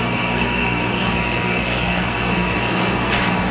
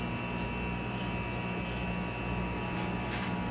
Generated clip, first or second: first